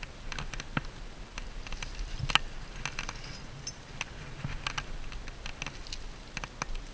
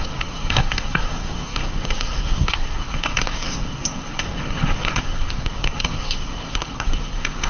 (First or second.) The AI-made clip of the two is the second